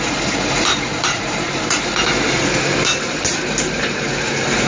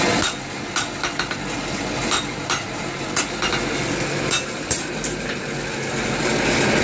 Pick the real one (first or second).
second